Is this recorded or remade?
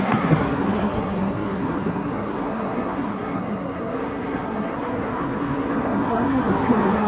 remade